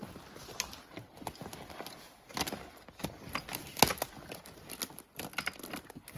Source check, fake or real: real